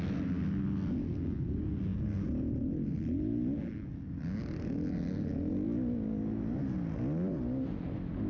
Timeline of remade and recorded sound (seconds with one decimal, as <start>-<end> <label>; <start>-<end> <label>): 0.0-8.3 recorded